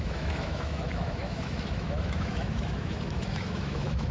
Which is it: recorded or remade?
remade